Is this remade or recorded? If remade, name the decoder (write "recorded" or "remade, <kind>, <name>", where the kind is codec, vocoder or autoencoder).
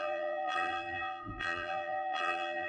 remade, vocoder, BigVGAN v2